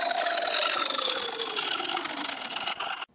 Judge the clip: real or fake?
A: real